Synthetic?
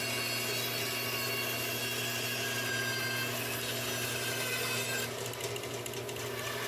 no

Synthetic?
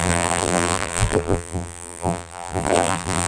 yes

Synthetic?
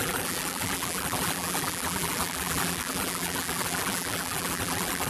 yes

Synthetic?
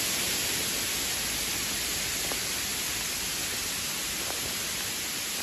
no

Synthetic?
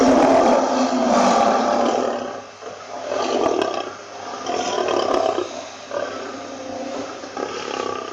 no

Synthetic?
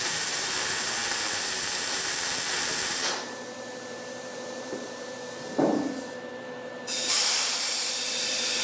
yes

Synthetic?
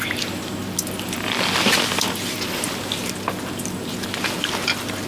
no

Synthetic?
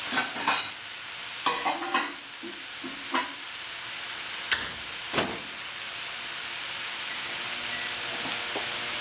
no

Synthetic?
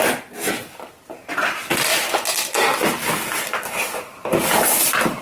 no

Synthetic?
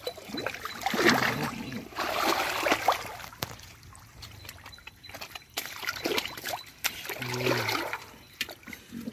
no